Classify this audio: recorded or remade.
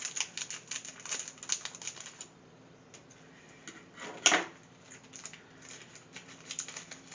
recorded